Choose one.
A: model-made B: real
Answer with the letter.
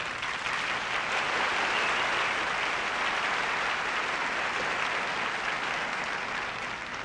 B